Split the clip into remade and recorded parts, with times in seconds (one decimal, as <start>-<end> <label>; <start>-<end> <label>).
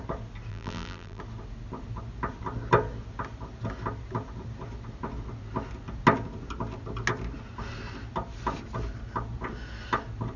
0.0-0.5 recorded; 0.5-1.2 remade; 1.2-10.4 recorded